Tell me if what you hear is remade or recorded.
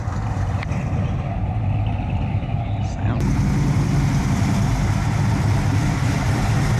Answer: remade